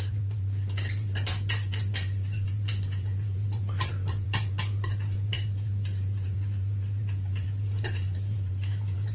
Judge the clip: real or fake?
fake